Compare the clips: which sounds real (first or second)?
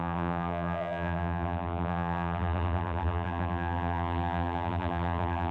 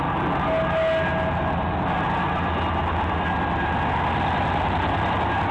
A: second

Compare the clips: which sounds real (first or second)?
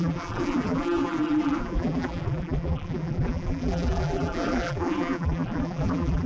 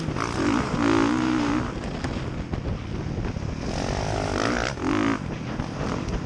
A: second